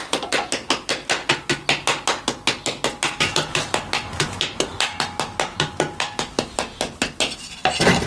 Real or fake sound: real